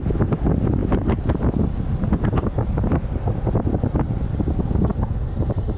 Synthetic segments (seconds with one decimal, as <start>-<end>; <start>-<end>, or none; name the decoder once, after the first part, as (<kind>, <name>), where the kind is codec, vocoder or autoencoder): none